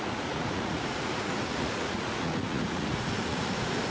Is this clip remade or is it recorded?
remade